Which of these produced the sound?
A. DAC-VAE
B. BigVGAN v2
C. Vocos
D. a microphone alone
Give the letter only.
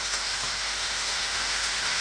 A